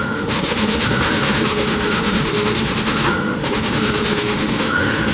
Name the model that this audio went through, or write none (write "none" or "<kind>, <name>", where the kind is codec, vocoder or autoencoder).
autoencoder, DAC-VAE